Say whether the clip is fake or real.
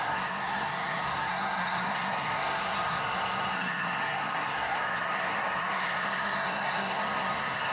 fake